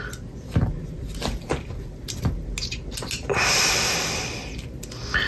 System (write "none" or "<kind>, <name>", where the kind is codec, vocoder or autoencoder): none